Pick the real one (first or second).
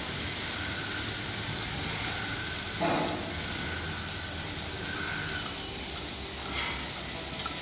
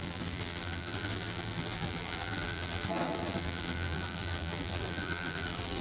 first